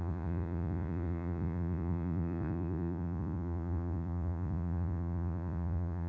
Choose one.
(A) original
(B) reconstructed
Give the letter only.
B